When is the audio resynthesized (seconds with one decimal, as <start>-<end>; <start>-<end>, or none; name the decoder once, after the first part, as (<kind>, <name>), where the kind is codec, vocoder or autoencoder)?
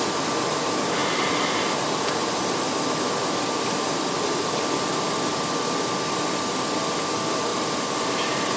7.5-8.6 (vocoder, BigVGAN v2)